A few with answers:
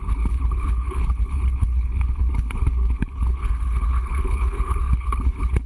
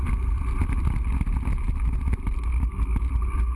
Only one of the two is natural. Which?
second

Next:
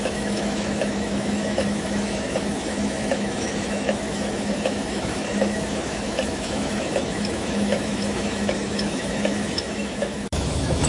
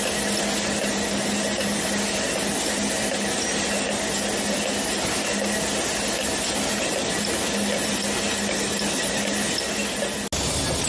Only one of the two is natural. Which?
second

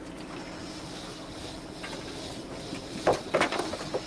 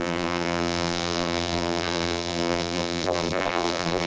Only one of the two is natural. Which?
first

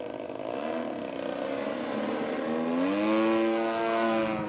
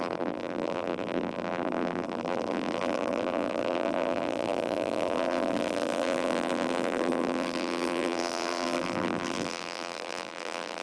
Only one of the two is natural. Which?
first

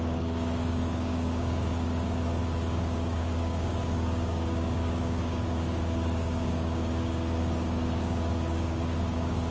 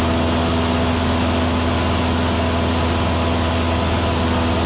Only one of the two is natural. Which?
second